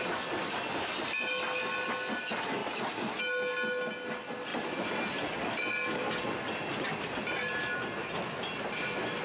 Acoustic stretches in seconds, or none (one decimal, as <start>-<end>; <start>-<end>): 0.0-8.4